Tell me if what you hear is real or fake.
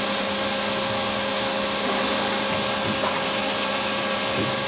real